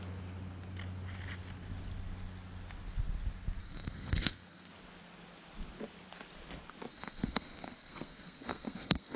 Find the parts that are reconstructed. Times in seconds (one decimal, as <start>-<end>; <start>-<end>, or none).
3.6-4.7; 6.9-9.2